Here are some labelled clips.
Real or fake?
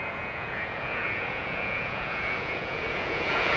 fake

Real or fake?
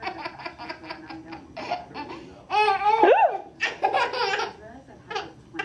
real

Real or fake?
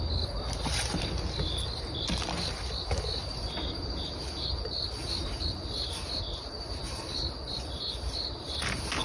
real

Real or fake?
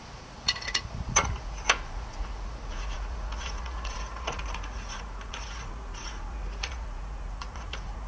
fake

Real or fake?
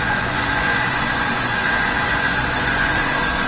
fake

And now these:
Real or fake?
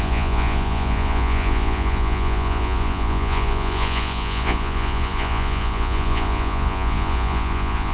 fake